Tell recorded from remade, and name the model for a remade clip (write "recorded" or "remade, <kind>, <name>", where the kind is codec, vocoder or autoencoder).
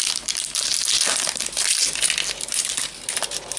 recorded